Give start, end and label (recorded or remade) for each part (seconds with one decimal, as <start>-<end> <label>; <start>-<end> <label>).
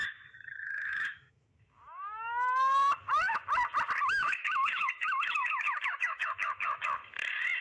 0.0-3.1 remade; 3.1-4.0 recorded; 4.0-7.0 remade; 7.0-7.6 recorded